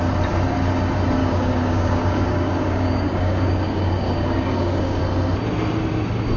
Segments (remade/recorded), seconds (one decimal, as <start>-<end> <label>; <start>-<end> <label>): 0.0-1.2 recorded; 1.2-5.0 remade; 5.0-6.4 recorded